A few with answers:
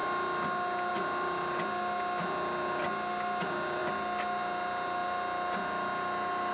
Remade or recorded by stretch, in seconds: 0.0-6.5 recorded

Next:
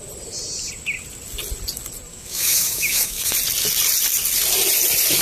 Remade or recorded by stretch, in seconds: 0.0-2.1 recorded; 2.1-3.3 remade; 3.3-5.2 recorded

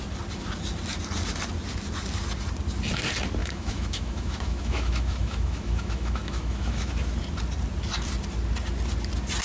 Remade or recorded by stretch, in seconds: 0.0-3.4 recorded; 3.4-6.9 remade; 6.9-9.4 recorded

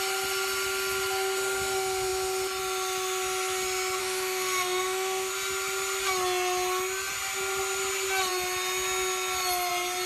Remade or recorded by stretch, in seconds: 0.0-4.0 recorded; 4.0-5.3 remade; 5.3-10.1 recorded

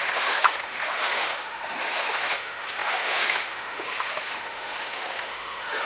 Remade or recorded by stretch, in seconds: 0.0-5.9 remade

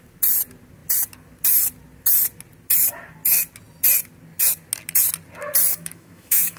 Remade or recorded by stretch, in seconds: 0.0-5.7 recorded; 5.7-6.6 remade

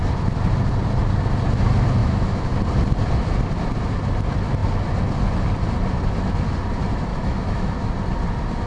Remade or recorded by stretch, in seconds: 0.0-2.0 recorded; 2.0-2.5 remade; 2.5-7.1 recorded; 7.1-7.7 remade; 7.7-8.7 recorded

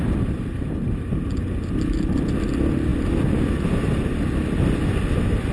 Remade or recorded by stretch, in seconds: 0.0-5.5 recorded